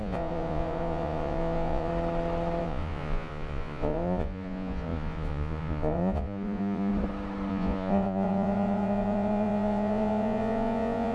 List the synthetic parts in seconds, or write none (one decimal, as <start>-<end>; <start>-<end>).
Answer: 0.0-1.9; 2.6-6.9; 7.5-11.1